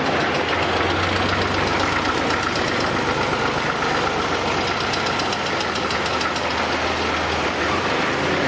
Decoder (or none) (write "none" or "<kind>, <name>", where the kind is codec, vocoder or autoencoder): none